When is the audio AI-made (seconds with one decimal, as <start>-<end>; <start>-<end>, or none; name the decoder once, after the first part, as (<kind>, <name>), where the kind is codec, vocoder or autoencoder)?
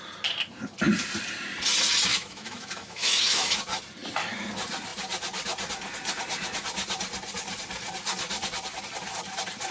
2.1-3.6 (autoencoder, DAC-VAE)